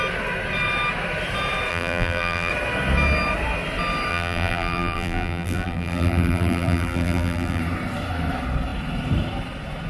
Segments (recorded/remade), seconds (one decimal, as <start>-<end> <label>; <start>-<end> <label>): 0.0-1.7 recorded; 1.7-2.5 remade; 2.5-4.1 recorded; 4.1-7.6 remade; 7.6-9.9 recorded